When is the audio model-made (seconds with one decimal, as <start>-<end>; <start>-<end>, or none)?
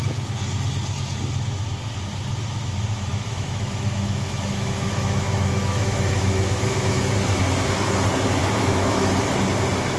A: 3.1-7.0; 8.4-9.1